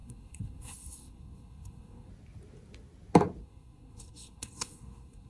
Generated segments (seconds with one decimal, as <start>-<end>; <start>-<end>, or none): 0.0-2.1; 3.4-5.3